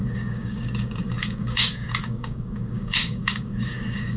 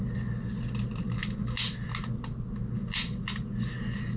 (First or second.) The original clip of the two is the second